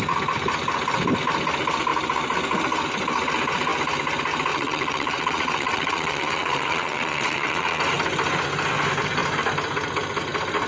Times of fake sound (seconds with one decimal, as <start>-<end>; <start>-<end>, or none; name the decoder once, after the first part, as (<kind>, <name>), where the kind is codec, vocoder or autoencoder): 4.5-7.8 (vocoder, WaveNeXt)